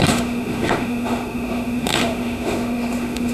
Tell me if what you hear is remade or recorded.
remade